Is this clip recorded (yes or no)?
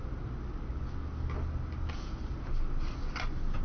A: yes